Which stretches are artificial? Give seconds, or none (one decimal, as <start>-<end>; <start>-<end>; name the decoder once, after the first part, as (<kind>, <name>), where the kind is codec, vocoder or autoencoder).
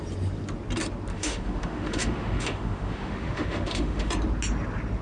1.1-4.1 (autoencoder, DAC-VAE)